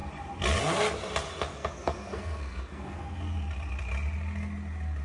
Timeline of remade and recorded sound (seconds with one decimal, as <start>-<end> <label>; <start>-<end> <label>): 0.0-1.5 recorded; 1.5-3.2 remade; 3.2-5.0 recorded